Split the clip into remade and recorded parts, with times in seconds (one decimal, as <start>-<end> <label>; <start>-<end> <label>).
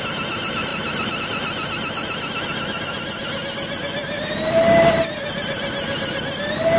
0.0-0.7 recorded; 0.7-1.2 remade; 1.2-4.0 recorded; 4.0-6.8 remade